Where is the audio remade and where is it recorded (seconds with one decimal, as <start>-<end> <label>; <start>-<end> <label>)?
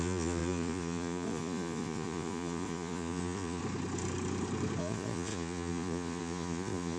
0.0-3.6 remade; 3.6-4.8 recorded; 4.8-7.0 remade